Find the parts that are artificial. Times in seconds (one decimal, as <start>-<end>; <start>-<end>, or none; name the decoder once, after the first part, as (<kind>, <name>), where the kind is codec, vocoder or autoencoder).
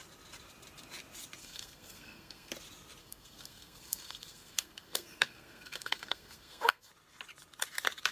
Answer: 1.4-2.5 (codec, SNAC); 3.0-6.9